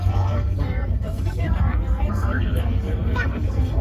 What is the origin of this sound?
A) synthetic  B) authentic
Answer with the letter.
A